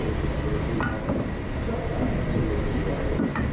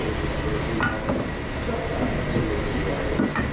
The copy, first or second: first